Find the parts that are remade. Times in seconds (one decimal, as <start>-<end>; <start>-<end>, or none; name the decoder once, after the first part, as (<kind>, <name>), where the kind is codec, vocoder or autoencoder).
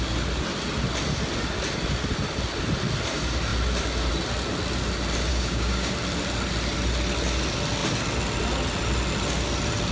5.3-5.9 (codec, DAC)